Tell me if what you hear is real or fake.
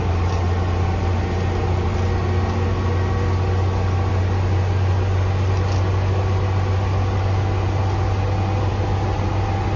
real